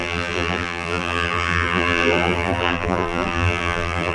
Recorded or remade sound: remade